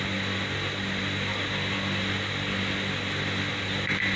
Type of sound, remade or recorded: recorded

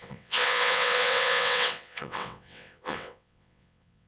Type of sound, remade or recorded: remade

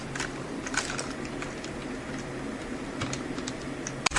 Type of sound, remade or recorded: remade